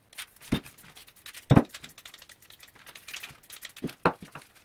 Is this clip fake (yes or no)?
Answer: no